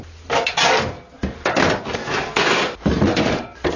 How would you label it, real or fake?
real